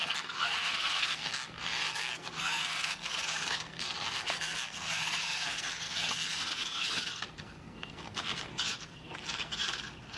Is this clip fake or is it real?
fake